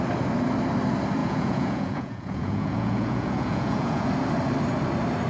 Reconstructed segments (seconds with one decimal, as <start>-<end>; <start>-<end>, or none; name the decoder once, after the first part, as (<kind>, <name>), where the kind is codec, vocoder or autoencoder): 1.2-4.1 (vocoder, Vocos)